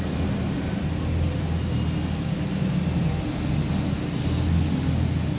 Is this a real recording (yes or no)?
yes